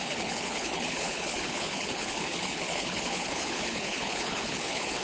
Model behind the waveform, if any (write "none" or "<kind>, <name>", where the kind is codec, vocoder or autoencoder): codec, HILCodec